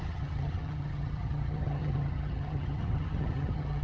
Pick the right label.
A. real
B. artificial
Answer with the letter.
B